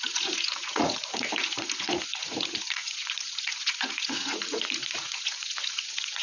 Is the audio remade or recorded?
remade